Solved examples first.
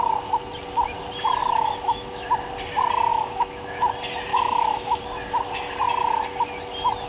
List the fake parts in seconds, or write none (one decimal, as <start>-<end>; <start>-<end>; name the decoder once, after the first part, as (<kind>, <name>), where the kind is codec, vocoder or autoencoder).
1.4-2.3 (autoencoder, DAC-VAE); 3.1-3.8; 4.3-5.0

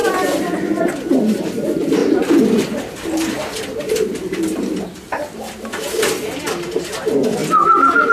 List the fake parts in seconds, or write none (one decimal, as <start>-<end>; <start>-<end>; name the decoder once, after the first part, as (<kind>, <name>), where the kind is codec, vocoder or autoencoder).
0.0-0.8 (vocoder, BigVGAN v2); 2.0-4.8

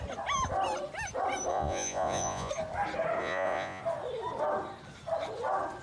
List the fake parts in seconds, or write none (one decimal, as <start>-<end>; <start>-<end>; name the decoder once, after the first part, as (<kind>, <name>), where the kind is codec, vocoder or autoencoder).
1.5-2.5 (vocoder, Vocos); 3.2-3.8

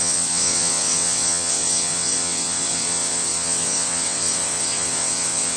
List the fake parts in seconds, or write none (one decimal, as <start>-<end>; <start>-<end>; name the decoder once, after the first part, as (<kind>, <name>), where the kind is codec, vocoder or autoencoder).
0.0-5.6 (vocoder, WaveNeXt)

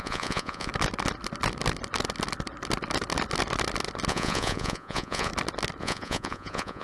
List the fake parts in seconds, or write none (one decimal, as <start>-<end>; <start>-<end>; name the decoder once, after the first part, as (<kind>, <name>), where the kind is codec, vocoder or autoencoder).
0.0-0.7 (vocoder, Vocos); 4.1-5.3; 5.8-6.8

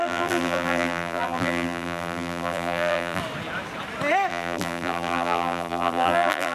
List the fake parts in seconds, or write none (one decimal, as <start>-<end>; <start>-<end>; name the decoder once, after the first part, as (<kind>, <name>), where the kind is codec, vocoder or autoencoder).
0.0-3.2 (vocoder, BigVGAN v2); 4.3-6.5